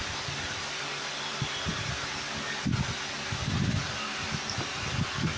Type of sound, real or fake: real